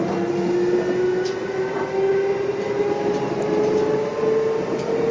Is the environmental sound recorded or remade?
recorded